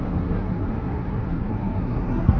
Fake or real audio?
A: fake